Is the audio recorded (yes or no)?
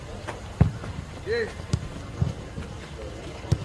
yes